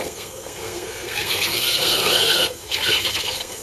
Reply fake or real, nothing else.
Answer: fake